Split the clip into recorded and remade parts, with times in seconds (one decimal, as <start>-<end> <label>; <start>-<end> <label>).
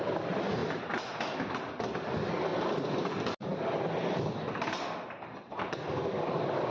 0.0-6.7 recorded